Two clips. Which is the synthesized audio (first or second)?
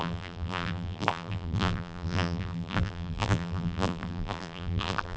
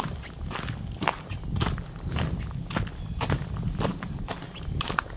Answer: first